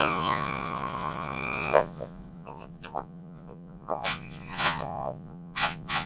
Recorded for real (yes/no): no